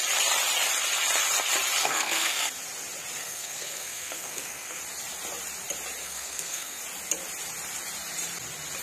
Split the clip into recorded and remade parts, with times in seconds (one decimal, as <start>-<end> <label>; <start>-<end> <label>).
0.0-1.8 recorded; 1.8-2.5 remade; 2.5-3.2 recorded; 3.2-4.8 remade; 4.8-6.0 recorded; 6.0-6.8 remade; 6.8-8.8 recorded